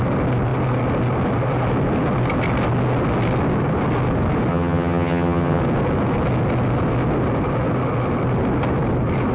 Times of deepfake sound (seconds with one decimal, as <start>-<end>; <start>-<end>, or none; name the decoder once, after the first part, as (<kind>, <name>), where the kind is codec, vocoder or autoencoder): 4.5-5.6 (vocoder, HiFi-GAN)